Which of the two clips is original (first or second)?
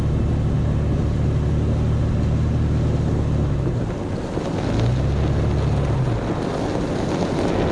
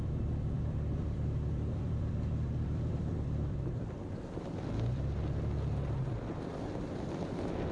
first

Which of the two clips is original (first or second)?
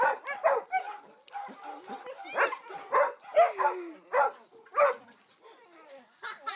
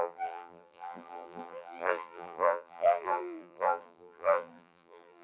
first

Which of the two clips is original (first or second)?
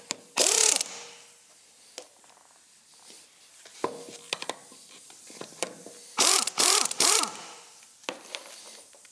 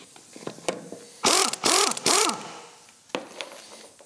second